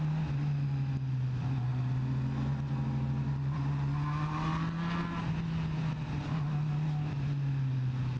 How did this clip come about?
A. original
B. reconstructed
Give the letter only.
A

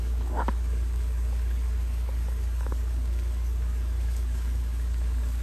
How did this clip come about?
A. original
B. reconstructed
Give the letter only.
B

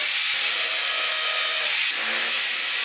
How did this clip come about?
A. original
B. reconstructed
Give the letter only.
A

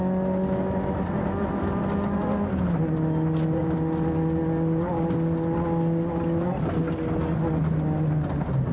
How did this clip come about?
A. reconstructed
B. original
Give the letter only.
B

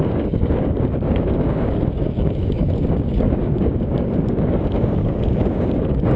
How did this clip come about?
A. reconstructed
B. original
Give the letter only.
A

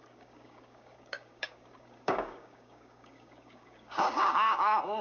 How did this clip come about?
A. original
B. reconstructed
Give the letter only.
B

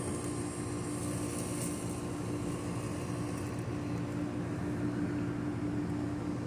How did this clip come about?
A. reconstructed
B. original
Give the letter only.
B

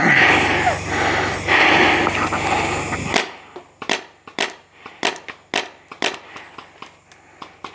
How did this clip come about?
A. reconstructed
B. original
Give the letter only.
B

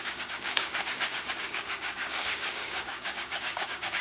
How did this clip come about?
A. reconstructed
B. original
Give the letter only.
A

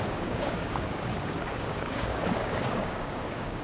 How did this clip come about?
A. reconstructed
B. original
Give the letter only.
A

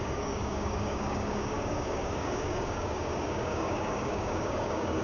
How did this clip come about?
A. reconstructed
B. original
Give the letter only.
A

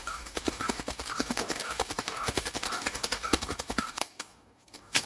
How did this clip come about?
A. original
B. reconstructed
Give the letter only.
B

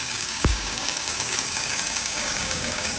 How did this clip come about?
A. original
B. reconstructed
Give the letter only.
B